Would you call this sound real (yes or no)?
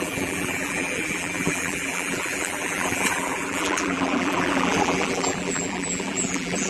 no